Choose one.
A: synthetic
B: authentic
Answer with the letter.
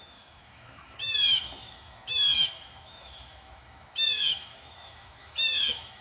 A